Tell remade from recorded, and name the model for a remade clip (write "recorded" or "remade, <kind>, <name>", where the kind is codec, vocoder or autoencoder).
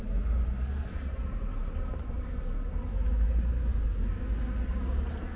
recorded